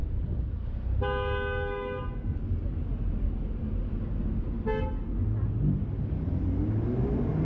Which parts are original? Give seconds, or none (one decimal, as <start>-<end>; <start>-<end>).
0.0-7.4